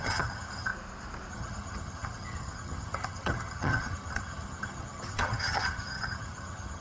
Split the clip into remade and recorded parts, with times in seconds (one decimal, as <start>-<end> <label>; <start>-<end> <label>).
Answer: 0.0-0.7 remade; 0.7-1.3 recorded; 1.3-6.8 remade

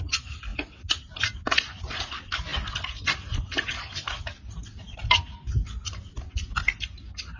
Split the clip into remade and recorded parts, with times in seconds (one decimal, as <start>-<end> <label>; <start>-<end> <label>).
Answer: 0.0-7.4 recorded

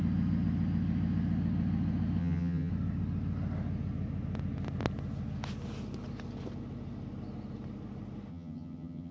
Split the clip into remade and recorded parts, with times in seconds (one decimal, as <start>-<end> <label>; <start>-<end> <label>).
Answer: 0.0-2.2 recorded; 2.2-2.7 remade; 2.7-8.3 recorded; 8.3-9.1 remade

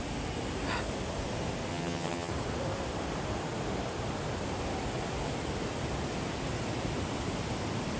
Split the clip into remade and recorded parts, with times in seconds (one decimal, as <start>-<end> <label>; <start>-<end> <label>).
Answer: 0.0-1.7 recorded; 1.7-2.3 remade; 2.3-8.0 recorded

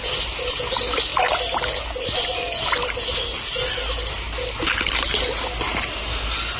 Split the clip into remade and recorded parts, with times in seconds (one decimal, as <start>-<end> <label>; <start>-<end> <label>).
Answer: 0.0-6.6 recorded